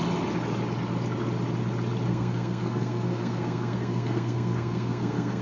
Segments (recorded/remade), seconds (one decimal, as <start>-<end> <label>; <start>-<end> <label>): 0.0-2.1 recorded; 2.1-5.4 remade